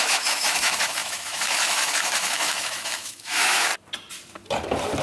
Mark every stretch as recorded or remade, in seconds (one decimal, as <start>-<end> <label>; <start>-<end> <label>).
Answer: 0.0-3.7 remade; 3.7-5.0 recorded